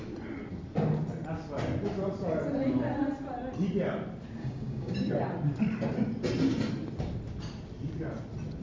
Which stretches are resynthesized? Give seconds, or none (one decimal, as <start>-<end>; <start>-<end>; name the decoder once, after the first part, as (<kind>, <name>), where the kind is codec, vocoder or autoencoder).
4.4-5.1 (codec, DAC)